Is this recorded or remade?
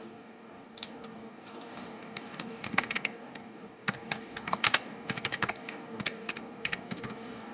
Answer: remade